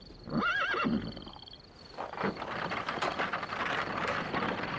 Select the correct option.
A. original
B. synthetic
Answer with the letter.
A